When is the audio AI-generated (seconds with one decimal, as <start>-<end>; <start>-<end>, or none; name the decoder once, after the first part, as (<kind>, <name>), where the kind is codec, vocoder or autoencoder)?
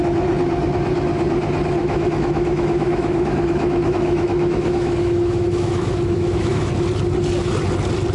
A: 1.8-6.7 (autoencoder, DAC-VAE)